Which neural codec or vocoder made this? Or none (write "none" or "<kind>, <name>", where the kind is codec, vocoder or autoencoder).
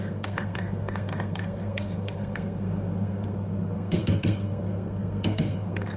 codec, SNAC